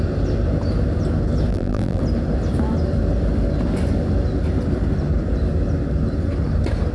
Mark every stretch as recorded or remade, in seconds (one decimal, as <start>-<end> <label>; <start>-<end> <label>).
0.0-1.5 recorded; 1.5-2.0 remade; 2.0-6.9 recorded